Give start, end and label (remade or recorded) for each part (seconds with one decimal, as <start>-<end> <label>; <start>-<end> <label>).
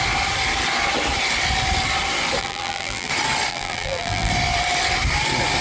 0.0-2.4 recorded; 2.4-3.1 remade; 3.1-3.5 recorded; 3.5-4.3 remade; 4.3-5.6 recorded